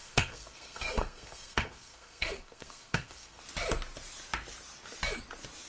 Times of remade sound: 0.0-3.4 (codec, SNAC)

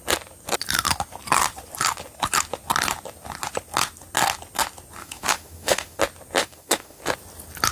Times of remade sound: 5.0-6.0 (autoencoder, DAC-VAE); 6.4-7.0

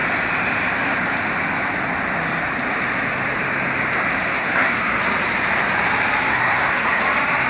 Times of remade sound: 4.4-5.0 (codec, SNAC); 6.3-7.0

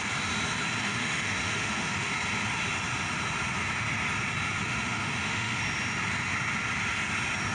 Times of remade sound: 0.8-2.1 (autoencoder, DAC-VAE); 4.6-5.6

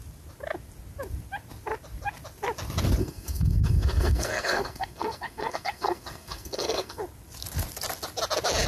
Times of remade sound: 3.0-7.0 (codec, SNAC)